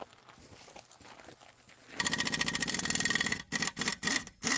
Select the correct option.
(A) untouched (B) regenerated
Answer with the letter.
A